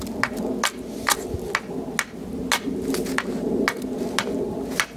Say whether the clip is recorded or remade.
recorded